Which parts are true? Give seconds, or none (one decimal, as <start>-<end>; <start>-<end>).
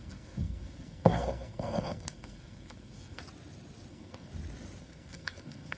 3.2-3.9; 4.3-4.8